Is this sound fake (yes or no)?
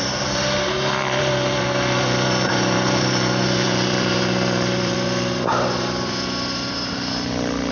yes